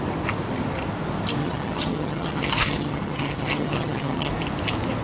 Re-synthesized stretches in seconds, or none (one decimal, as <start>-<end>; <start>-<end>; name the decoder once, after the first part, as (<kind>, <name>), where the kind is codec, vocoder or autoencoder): 1.4-4.3 (vocoder, HiFi-GAN)